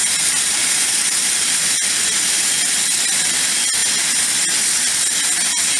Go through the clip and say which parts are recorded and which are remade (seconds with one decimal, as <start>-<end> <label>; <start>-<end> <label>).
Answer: 0.0-5.8 recorded